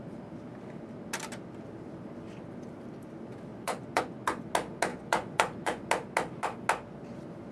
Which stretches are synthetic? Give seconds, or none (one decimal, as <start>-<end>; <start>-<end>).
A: 3.5-4.4; 4.9-5.9